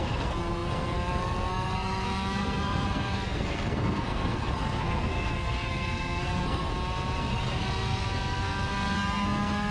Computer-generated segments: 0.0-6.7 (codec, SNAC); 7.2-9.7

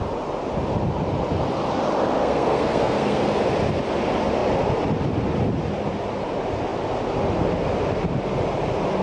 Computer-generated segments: 2.2-3.4 (codec, SNAC)

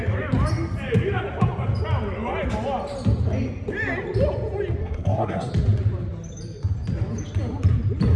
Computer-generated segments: 4.8-5.5 (codec, SNAC)

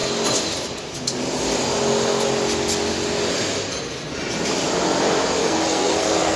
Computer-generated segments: 5.4-6.4 (codec, SNAC)

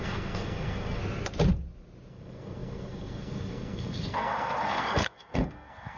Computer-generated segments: 0.0-1.0 (codec, SNAC); 2.1-6.0

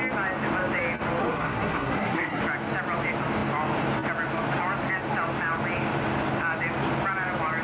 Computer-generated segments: 1.2-2.4 (codec, SNAC)

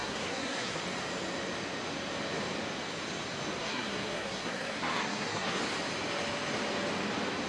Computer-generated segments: 0.0-0.8 (codec, SNAC); 3.6-5.6